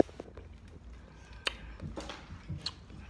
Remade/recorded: recorded